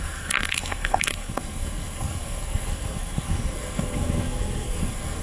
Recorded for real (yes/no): no